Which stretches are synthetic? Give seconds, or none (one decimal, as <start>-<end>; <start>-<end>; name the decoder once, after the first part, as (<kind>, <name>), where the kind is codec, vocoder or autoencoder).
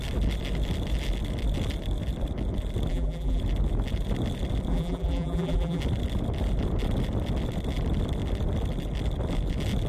2.9-3.4 (vocoder, BigVGAN v2); 4.7-5.8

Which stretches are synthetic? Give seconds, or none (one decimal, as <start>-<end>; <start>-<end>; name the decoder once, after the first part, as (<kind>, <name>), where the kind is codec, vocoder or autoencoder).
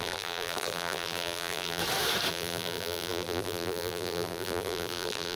0.0-1.8 (vocoder, BigVGAN v2); 2.3-5.4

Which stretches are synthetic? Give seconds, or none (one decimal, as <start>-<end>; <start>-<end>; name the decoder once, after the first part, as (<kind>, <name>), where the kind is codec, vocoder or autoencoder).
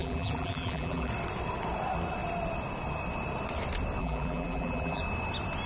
0.0-1.1 (vocoder, BigVGAN v2); 4.0-5.0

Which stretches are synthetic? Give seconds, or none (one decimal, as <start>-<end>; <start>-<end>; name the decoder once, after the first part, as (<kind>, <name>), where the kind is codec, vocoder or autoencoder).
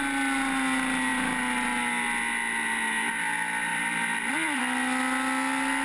3.7-4.6 (vocoder, BigVGAN v2)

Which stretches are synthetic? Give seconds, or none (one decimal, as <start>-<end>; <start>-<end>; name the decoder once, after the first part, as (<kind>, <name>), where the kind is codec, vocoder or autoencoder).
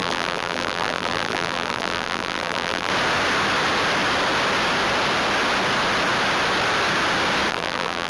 0.0-2.9 (vocoder, BigVGAN v2); 7.5-8.1